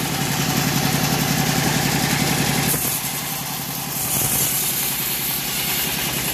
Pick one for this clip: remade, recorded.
recorded